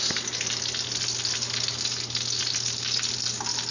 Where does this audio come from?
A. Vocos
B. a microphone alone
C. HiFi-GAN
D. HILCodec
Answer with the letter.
B